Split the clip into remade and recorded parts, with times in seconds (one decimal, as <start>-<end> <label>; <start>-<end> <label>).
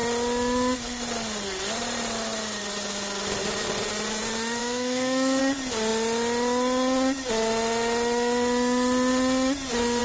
0.0-4.6 recorded; 4.6-5.4 remade; 5.4-10.0 recorded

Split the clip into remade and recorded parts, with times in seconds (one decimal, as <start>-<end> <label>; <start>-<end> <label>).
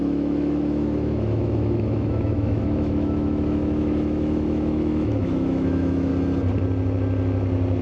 0.0-6.1 remade; 6.1-7.8 recorded